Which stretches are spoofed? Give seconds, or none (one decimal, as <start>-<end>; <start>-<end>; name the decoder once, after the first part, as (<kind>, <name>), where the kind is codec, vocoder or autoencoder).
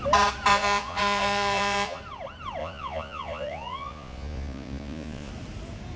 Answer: 0.5-2.0 (vocoder, Vocos); 2.6-5.3